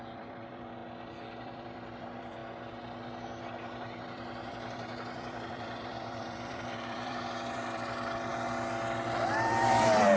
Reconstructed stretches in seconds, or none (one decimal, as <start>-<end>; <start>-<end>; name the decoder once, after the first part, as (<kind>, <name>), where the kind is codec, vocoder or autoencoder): 0.0-0.8 (vocoder, BigVGAN v2); 1.4-2.4; 3.4-8.3; 9.3-10.2